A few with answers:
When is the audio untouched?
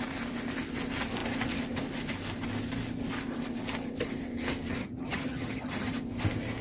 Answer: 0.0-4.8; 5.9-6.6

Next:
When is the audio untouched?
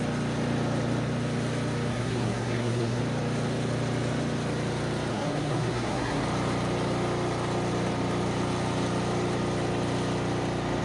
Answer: 0.0-1.9; 3.0-5.1; 6.2-10.8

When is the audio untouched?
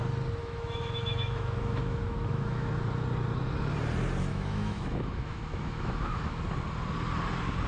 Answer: 0.0-0.4; 2.7-4.3; 6.4-7.7